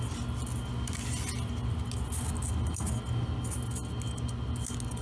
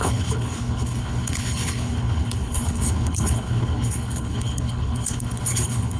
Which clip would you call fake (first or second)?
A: second